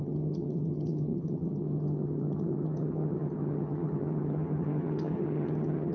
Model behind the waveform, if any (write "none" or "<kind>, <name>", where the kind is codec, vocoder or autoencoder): vocoder, HiFi-GAN